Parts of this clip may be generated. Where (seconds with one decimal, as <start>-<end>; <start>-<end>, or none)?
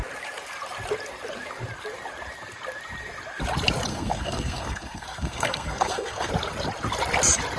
3.9-6.3